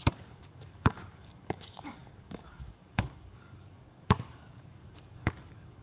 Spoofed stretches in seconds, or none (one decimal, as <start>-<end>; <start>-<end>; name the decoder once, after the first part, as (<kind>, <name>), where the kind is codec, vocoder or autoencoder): 0.0-5.8 (codec, DAC)